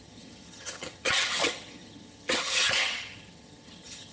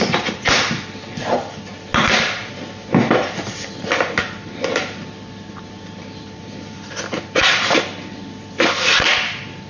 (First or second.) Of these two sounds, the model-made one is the first